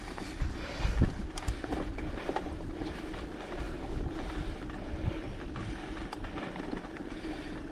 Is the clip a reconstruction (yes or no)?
no